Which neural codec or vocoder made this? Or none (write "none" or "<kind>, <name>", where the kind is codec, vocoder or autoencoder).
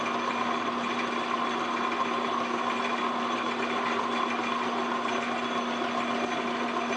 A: none